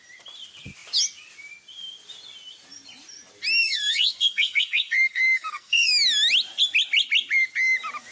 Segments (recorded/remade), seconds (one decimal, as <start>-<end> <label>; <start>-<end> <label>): 0.0-3.6 recorded; 3.6-5.9 remade; 5.9-8.1 recorded